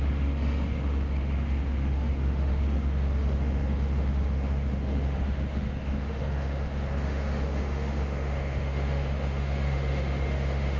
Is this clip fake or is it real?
fake